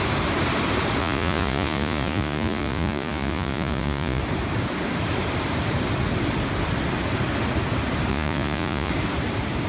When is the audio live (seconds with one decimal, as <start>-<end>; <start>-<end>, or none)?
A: 0.0-1.0; 4.2-8.1; 8.9-9.7